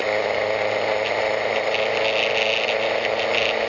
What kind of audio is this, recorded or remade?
recorded